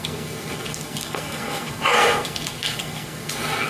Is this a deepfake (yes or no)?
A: yes